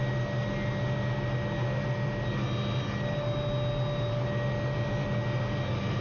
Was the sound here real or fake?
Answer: real